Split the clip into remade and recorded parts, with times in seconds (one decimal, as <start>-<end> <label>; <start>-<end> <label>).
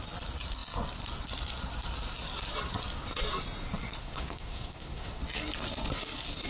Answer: 0.0-4.0 recorded; 4.0-5.2 remade; 5.2-6.5 recorded